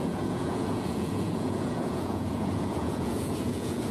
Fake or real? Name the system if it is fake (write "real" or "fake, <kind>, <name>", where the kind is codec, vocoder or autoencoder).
fake, vocoder, Vocos